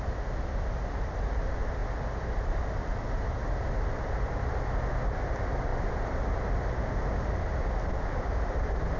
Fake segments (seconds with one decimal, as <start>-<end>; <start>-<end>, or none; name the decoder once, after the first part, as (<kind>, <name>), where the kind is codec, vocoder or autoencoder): none